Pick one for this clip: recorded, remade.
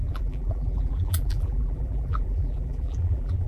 remade